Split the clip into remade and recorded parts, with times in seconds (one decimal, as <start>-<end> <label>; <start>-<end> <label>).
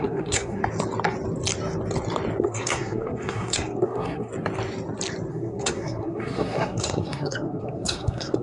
0.0-0.6 remade; 0.6-2.4 recorded; 2.4-4.3 remade; 4.3-5.3 recorded; 5.3-8.4 remade